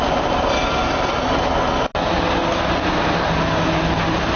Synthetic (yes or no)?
no